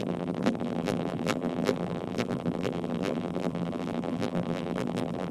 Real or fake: fake